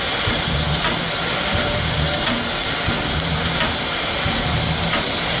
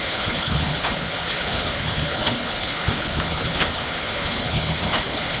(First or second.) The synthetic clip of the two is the second